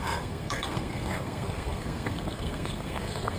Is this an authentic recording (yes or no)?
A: no